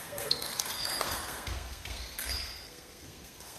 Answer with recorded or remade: remade